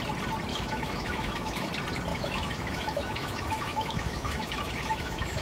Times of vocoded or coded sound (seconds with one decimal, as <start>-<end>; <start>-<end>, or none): 0.5-1.7; 2.1-5.4